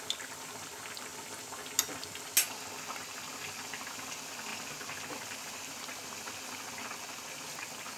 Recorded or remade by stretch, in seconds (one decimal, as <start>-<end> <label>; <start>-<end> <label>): 0.0-8.0 recorded